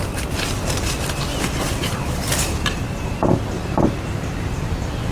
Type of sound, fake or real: real